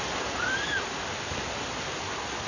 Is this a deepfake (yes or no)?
no